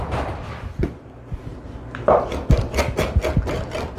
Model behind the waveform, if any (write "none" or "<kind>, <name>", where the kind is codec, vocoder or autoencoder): none